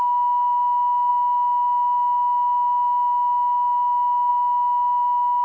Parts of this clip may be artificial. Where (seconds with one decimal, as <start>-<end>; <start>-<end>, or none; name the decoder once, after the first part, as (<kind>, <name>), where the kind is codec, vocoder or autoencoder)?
none